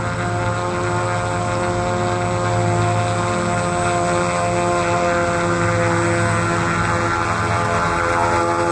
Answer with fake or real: real